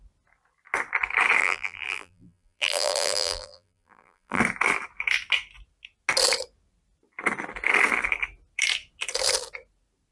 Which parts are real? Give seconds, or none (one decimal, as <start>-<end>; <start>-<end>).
0.0-1.4; 4.4-10.1